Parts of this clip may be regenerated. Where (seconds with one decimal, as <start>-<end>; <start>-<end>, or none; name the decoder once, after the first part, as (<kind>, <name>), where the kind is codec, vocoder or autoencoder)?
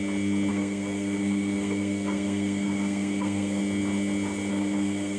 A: 0.5-3.6 (codec, SNAC); 4.5-5.2